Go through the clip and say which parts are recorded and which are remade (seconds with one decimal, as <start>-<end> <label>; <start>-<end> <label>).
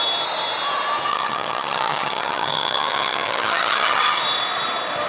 0.0-1.1 recorded; 1.1-4.2 remade; 4.2-5.1 recorded